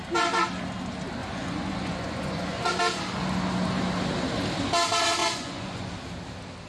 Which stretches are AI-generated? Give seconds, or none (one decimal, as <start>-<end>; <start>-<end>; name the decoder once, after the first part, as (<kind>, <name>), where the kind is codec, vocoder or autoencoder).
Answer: 1.2-2.8 (vocoder, Vocos); 5.2-5.9